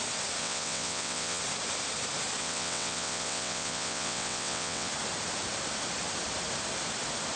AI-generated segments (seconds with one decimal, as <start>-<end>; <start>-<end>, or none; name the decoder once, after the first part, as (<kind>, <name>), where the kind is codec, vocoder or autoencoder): 0.4-1.4 (vocoder, WaveNeXt); 2.4-4.9